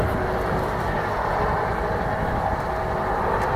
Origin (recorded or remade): recorded